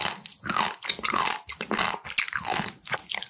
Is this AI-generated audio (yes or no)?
no